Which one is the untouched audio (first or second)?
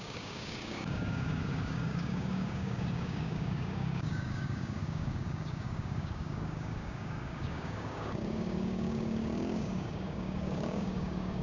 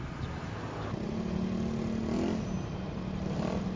second